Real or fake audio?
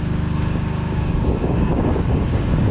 fake